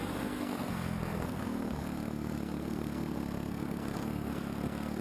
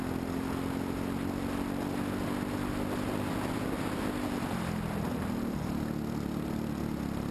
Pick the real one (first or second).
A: second